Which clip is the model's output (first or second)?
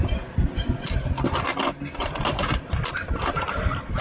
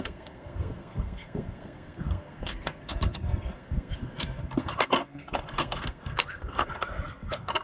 second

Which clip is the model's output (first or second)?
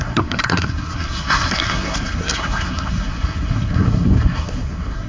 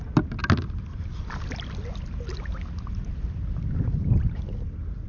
first